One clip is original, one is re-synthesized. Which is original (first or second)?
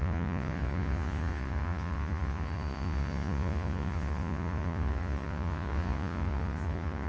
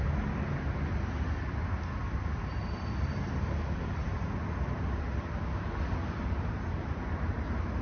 second